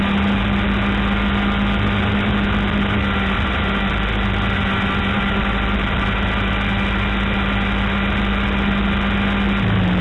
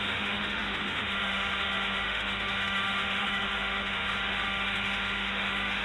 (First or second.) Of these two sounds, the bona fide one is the first